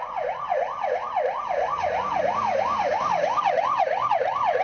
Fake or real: fake